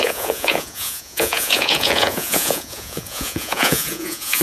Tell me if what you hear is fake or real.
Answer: fake